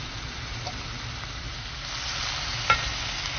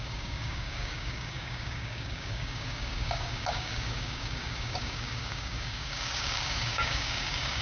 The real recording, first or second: first